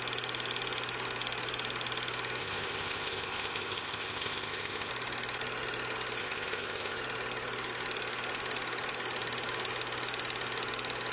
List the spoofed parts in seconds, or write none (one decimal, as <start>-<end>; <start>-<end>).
2.4-4.9; 6.2-7.0